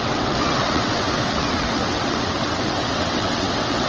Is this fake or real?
fake